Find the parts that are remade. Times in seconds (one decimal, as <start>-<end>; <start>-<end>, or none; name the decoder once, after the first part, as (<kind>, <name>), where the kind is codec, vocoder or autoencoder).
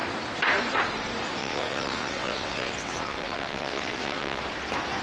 1.4-4.4 (vocoder, WaveNeXt)